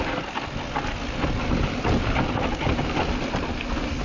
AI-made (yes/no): no